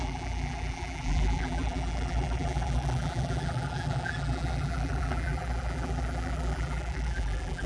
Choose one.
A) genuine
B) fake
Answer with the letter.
B